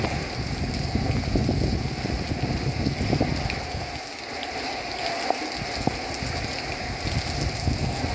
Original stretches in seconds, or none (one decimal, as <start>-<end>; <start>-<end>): 0.0-8.1